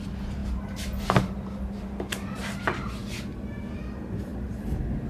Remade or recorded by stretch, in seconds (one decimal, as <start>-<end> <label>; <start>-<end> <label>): 0.0-4.3 recorded; 4.3-5.1 remade